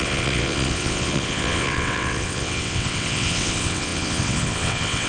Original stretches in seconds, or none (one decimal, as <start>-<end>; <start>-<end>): none